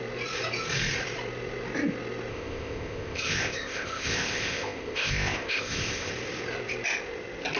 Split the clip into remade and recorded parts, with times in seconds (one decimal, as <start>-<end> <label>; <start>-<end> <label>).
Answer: 0.0-2.3 recorded; 2.3-6.1 remade; 6.1-7.6 recorded